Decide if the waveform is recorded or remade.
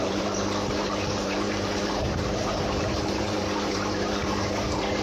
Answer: remade